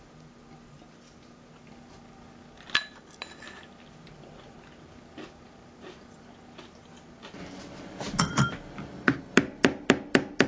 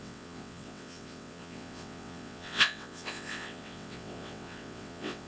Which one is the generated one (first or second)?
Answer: second